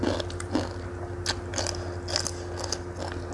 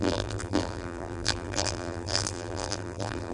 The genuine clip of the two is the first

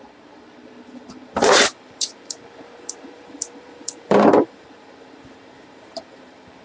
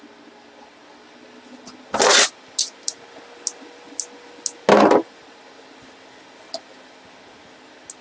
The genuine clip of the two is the second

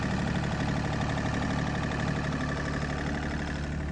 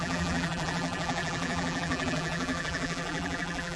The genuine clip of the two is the first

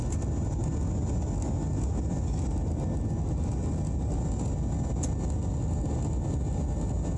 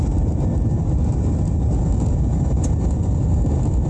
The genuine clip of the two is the first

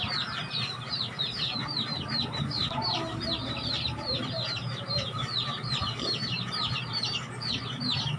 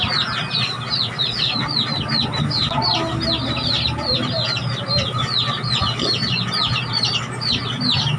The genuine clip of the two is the second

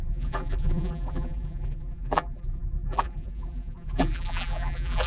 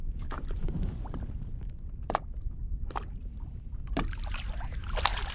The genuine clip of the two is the second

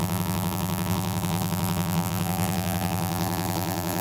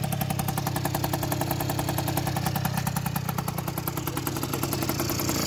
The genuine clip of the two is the second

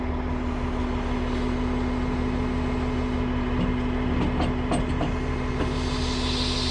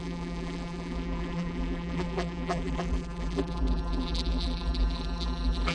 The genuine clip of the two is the first